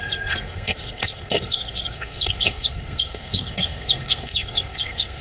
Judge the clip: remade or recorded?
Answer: remade